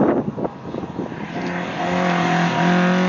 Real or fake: real